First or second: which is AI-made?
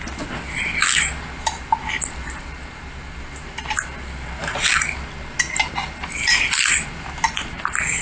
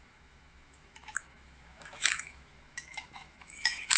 second